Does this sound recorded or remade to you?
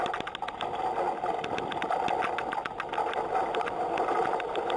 recorded